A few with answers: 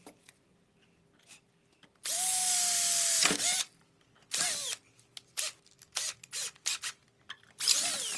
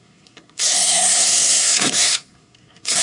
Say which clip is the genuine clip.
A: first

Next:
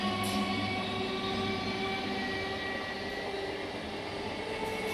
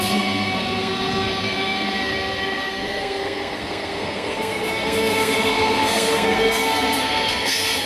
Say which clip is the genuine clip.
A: first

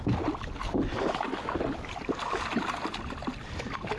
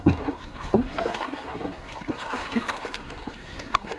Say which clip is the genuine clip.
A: first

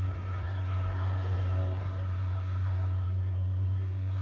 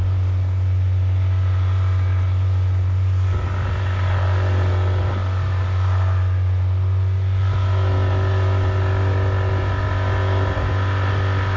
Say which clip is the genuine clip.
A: second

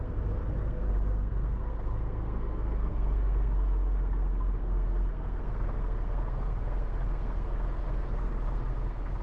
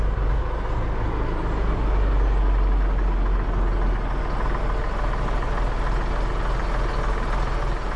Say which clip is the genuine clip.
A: second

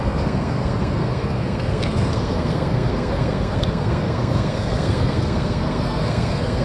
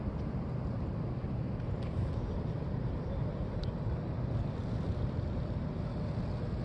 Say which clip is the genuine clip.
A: second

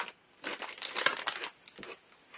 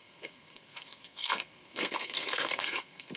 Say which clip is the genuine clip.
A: first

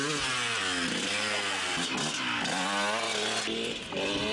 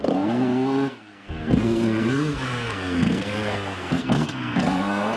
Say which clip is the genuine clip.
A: first